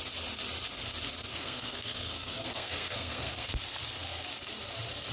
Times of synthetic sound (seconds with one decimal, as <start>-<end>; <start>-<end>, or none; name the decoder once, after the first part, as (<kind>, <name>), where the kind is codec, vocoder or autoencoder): 1.3-3.5 (codec, SNAC)